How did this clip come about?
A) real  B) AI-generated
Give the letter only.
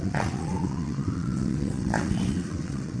B